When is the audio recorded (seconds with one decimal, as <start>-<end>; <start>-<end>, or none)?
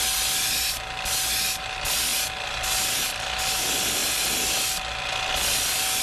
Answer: 0.0-6.0